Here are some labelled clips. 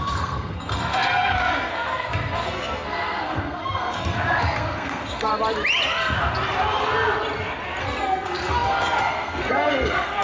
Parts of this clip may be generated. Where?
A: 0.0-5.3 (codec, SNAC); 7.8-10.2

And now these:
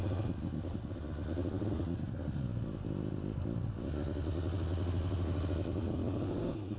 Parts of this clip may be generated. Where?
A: 0.0-2.5 (vocoder, BigVGAN v2); 4.9-6.8

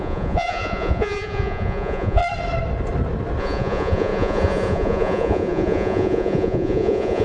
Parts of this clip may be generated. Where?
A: 0.0-2.2 (vocoder, Vocos); 3.4-7.2

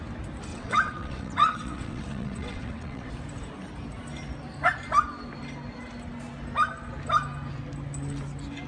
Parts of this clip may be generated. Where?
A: 0.5-3.1 (vocoder, WaveNeXt)

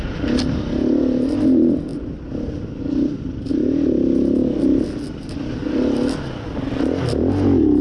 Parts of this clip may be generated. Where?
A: none

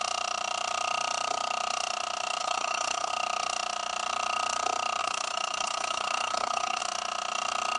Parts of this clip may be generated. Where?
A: 2.4-3.1 (codec, HILCodec); 5.0-6.8